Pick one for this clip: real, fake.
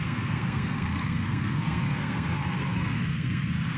fake